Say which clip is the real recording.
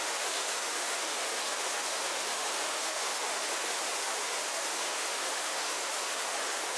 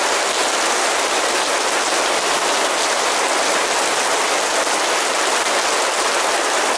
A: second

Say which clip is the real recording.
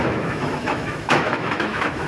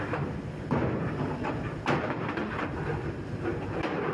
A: second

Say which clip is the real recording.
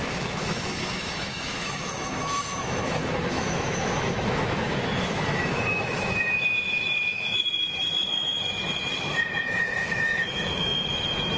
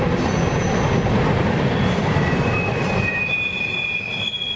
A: second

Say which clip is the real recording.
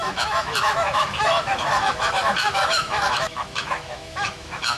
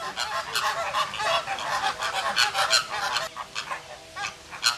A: second